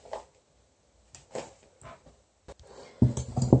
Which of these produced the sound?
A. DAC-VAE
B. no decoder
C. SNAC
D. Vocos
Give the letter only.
B